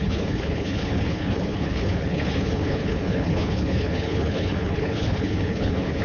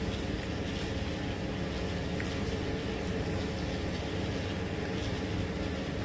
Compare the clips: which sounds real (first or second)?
second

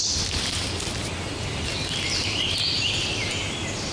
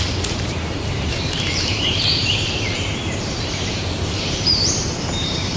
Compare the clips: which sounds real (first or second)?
first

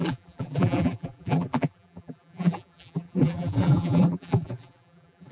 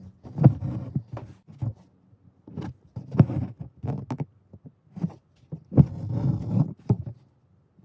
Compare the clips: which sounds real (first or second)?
second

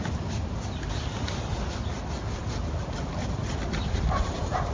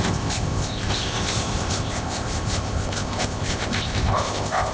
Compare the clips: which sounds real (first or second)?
first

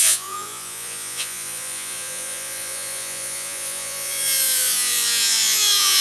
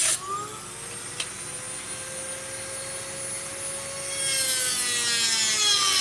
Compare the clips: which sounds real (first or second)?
second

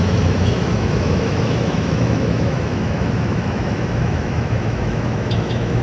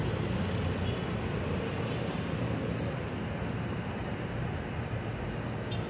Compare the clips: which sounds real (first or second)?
second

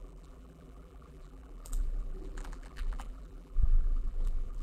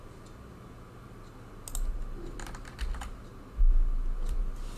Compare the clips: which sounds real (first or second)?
second